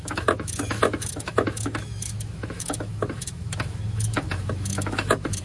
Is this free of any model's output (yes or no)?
no